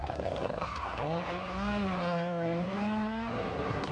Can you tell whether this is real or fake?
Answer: fake